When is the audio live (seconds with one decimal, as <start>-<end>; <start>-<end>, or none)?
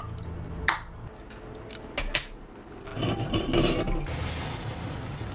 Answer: 0.0-5.3